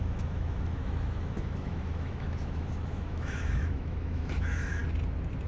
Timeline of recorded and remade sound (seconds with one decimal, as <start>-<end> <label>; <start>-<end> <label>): 0.0-4.8 remade; 4.8-5.5 recorded